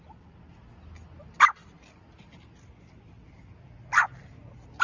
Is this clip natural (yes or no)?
yes